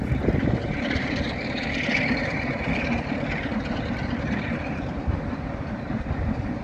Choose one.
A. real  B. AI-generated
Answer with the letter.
B